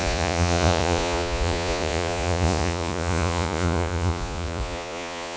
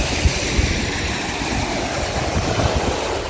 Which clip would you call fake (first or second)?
first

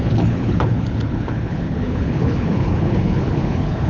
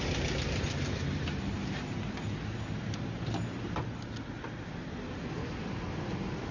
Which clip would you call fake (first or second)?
first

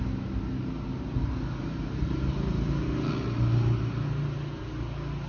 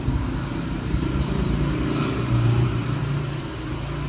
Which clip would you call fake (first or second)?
second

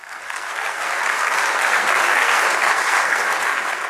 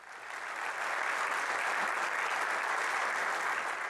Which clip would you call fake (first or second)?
first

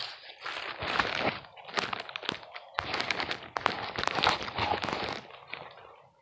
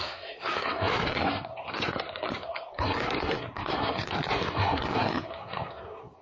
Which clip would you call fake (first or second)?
second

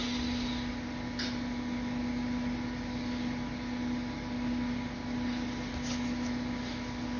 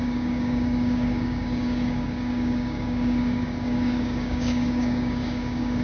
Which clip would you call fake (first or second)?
second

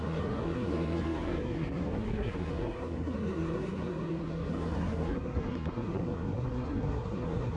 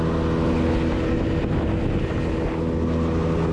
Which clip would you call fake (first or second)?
first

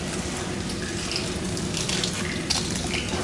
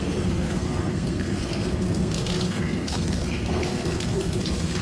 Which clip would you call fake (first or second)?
second